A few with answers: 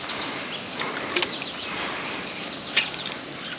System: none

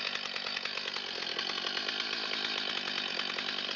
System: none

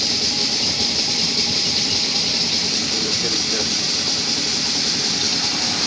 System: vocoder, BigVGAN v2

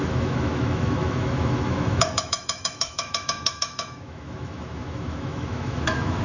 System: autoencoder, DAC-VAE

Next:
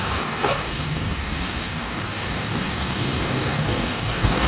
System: codec, DAC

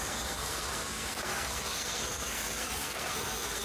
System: codec, SNAC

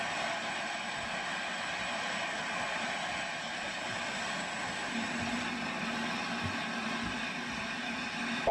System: none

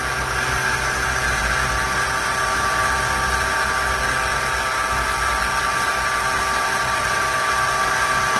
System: none